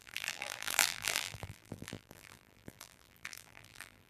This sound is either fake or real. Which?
fake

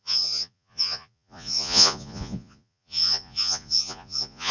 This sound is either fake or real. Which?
fake